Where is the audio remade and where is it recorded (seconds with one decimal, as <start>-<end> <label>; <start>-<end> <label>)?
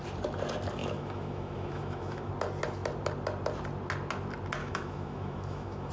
0.0-0.8 recorded; 0.8-2.3 remade; 2.3-4.6 recorded; 4.6-5.9 remade